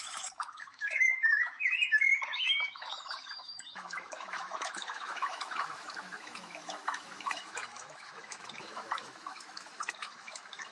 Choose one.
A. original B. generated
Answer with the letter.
B